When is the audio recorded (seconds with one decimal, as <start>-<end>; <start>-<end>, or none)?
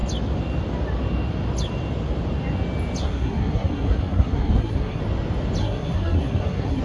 0.0-3.0; 5.0-5.6